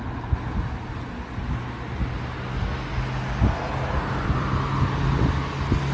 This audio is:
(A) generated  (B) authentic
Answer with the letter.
B